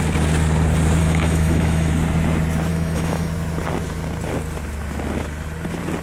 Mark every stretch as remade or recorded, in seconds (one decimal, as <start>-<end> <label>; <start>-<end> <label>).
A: 0.0-1.0 recorded; 1.0-1.9 remade; 1.9-2.7 recorded; 2.7-3.3 remade; 3.3-6.0 recorded